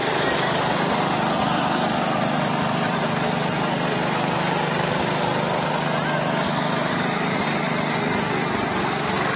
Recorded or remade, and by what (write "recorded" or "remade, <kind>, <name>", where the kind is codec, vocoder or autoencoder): recorded